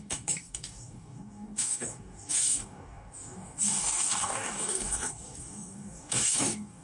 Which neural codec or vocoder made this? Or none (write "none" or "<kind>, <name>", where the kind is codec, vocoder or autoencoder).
codec, DAC